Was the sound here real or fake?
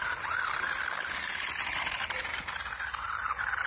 real